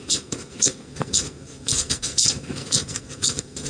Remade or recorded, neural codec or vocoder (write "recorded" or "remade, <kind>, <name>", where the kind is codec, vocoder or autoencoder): remade, codec, SNAC